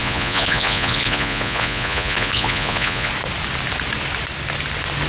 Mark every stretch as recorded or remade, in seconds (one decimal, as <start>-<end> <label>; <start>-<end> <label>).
0.0-3.1 remade; 3.1-5.1 recorded